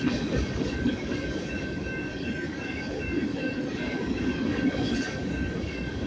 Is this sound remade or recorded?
remade